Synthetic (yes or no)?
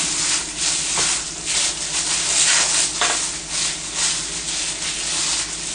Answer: no